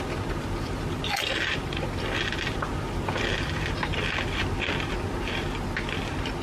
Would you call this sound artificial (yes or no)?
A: no